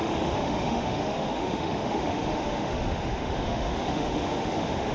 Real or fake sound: fake